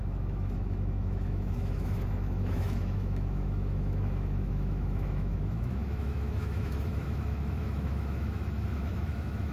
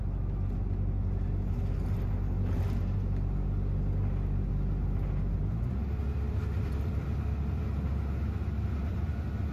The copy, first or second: first